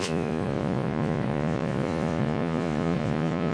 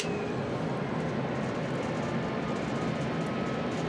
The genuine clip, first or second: second